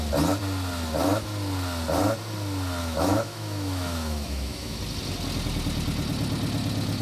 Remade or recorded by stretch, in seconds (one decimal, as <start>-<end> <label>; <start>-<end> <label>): 0.0-2.8 recorded; 2.8-4.8 remade; 4.8-7.0 recorded

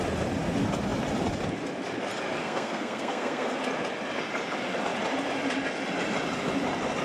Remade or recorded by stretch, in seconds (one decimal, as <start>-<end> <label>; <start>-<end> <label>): 0.0-2.4 recorded; 2.4-3.6 remade; 3.6-7.0 recorded

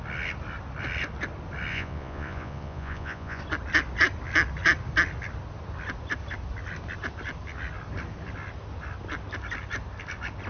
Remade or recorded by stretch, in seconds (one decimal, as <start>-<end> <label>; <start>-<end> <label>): 0.0-1.7 recorded; 1.7-3.4 remade; 3.4-10.5 recorded